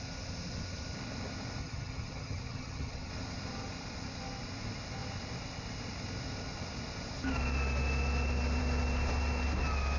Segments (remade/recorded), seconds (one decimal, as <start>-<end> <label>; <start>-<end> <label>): 0.0-1.6 recorded; 1.6-3.1 remade; 3.1-10.0 recorded